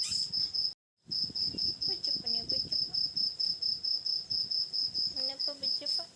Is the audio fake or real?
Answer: real